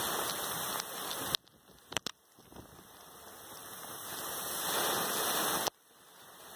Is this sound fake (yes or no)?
no